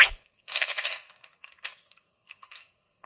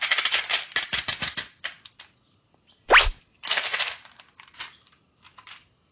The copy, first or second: first